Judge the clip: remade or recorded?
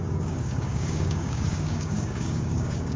remade